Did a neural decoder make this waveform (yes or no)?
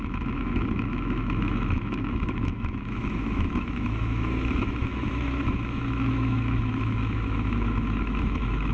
yes